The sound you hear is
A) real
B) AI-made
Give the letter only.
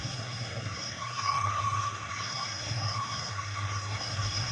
B